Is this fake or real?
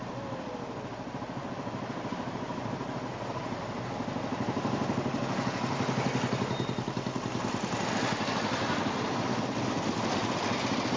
real